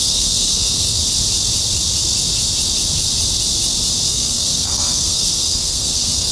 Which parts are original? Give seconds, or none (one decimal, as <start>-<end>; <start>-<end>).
1.0-4.1

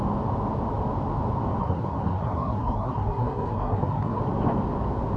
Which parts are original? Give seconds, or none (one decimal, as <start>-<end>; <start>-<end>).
0.0-1.6; 4.2-5.2

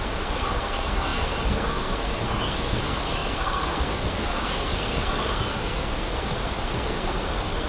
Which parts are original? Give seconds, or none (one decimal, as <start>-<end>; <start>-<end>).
none

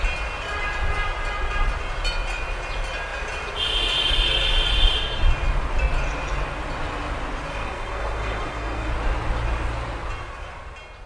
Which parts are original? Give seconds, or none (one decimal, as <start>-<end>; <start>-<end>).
0.0-7.5; 8.9-11.1

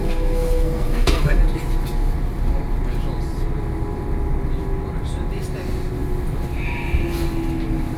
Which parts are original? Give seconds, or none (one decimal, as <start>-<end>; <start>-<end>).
1.4-8.0

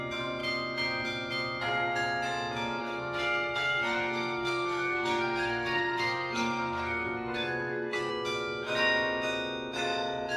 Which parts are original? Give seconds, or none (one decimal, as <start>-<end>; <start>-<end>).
0.0-2.8; 8.1-10.4

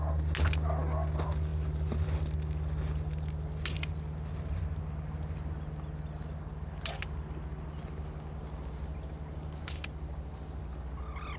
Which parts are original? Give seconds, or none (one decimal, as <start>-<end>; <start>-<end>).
0.0-11.4